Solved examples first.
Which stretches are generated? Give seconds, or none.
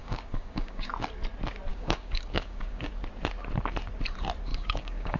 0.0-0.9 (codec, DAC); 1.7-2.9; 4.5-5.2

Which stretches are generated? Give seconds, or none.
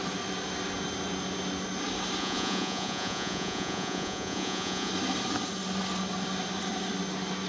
2.2-4.9 (vocoder, Vocos)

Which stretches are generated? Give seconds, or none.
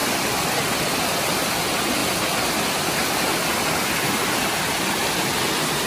none